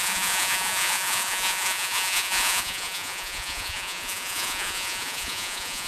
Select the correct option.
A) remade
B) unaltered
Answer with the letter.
A